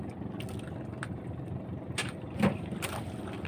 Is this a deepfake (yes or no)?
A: no